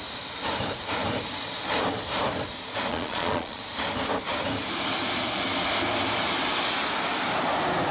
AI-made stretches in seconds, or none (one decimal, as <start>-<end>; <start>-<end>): 2.9-3.6